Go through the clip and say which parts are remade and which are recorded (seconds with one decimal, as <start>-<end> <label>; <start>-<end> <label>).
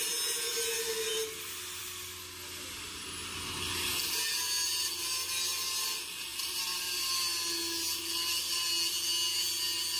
0.0-6.3 recorded; 6.3-7.1 remade; 7.1-10.0 recorded